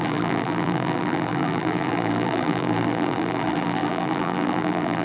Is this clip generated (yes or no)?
yes